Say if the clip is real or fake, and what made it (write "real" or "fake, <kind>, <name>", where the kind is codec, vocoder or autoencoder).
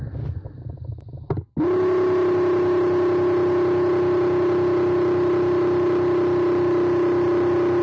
real